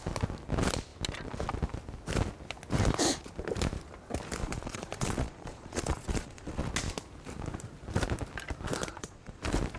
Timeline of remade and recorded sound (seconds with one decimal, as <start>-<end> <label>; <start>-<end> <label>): 0.0-4.4 recorded; 4.4-6.7 remade; 6.7-8.9 recorded; 8.9-9.4 remade; 9.4-9.8 recorded